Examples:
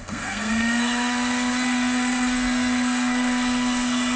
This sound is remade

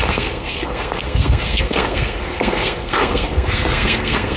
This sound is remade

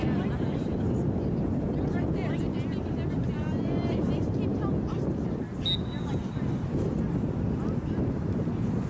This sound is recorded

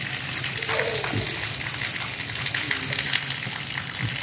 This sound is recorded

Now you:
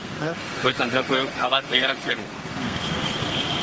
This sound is remade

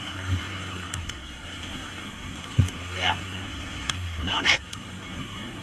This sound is remade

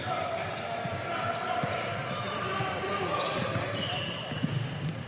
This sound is recorded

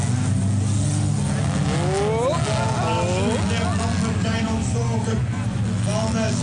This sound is recorded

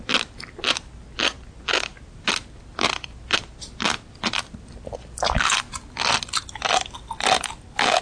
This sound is recorded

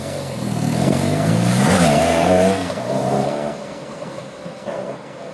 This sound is remade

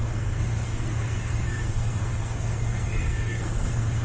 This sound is remade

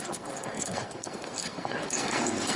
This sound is remade